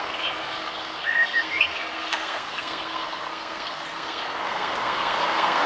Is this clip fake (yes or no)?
yes